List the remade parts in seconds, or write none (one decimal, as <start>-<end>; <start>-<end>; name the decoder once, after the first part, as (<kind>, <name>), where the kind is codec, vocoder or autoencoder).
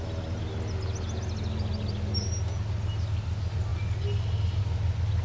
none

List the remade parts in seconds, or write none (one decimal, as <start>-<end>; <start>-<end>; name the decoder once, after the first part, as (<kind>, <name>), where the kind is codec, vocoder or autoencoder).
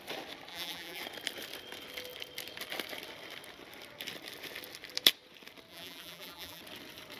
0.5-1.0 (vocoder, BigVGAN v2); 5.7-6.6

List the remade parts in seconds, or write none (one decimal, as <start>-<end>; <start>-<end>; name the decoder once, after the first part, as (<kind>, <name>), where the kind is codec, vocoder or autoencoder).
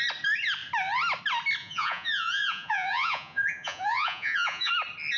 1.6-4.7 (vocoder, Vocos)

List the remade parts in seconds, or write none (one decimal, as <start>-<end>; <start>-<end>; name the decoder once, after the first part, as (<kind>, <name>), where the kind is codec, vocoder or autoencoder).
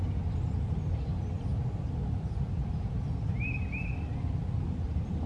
none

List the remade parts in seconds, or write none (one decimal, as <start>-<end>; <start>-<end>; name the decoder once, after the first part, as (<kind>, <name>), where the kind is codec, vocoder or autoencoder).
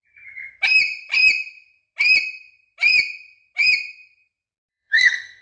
4.7-5.4 (codec, SNAC)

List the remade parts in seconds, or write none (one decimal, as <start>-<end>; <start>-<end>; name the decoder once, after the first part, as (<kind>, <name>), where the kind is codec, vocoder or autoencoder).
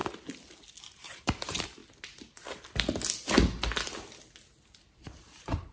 0.8-1.8 (vocoder, BigVGAN v2); 5.2-5.7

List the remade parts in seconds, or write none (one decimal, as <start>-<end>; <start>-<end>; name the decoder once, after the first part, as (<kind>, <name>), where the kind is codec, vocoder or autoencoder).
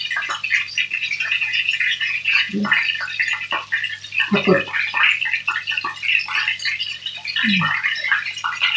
1.0-2.6 (vocoder, Vocos)